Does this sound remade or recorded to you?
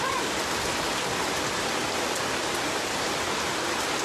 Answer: recorded